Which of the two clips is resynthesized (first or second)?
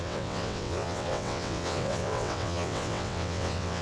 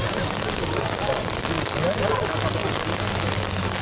first